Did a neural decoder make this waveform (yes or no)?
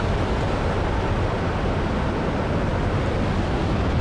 no